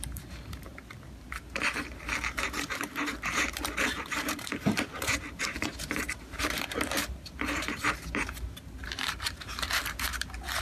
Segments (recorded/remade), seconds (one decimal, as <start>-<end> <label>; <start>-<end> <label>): 0.0-0.7 remade; 0.7-1.2 recorded; 1.2-10.6 remade